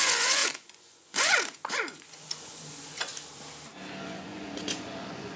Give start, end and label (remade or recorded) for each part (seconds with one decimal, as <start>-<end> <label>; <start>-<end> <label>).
0.0-3.1 remade; 3.1-4.0 recorded; 4.0-5.4 remade